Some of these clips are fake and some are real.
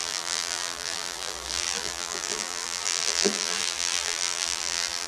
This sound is fake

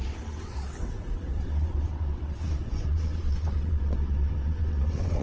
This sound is fake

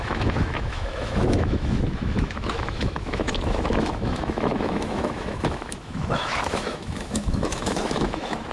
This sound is fake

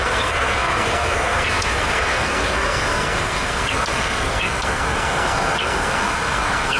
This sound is fake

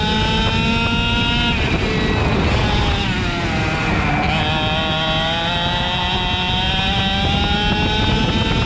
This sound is real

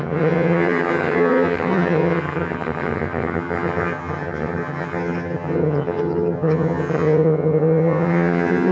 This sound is fake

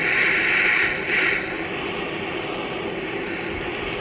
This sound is real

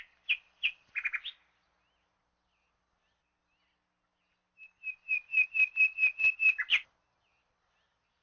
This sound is real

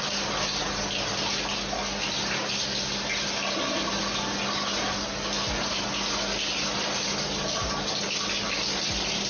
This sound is real